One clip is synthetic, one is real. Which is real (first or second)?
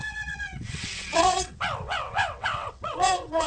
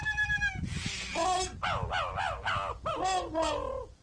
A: second